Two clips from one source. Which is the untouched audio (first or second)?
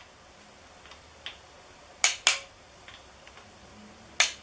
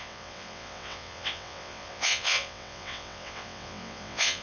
first